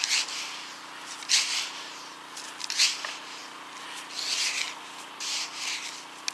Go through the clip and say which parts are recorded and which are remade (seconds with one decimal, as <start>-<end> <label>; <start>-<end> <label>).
0.0-6.3 recorded